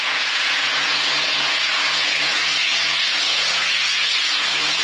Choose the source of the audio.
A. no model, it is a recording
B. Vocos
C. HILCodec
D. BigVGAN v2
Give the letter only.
B